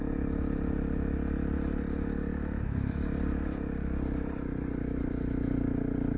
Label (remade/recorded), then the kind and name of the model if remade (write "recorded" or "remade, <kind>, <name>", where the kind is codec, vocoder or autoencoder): recorded